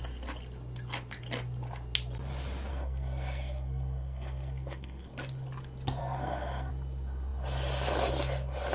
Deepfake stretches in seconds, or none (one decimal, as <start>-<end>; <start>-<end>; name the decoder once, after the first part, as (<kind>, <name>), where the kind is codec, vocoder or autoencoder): 2.7-5.1 (codec, SNAC); 6.0-6.7